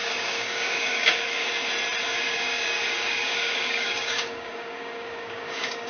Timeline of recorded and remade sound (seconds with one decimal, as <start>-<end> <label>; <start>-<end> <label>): 0.0-1.5 remade; 1.5-2.1 recorded; 2.1-5.9 remade